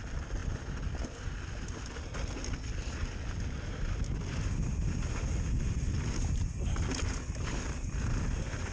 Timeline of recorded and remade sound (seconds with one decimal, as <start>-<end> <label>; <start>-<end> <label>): 0.0-8.7 recorded